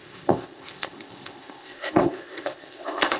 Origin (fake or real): fake